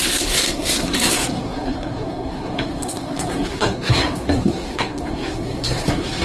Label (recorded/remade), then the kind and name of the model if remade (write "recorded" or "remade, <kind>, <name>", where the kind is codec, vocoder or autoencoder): remade, codec, SNAC